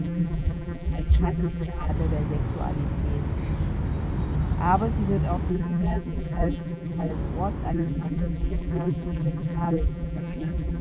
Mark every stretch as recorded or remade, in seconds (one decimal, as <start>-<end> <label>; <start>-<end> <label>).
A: 0.0-1.9 remade; 1.9-5.5 recorded; 5.5-7.1 remade; 7.1-7.7 recorded; 7.7-10.8 remade